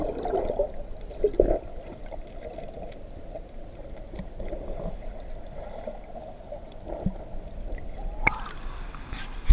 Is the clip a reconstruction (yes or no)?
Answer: no